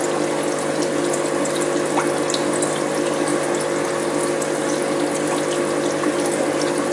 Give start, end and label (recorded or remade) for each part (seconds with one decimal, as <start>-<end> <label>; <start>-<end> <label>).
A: 0.0-6.9 recorded